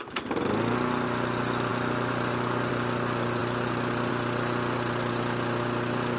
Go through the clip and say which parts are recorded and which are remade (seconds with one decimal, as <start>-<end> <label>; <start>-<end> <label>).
0.0-6.2 recorded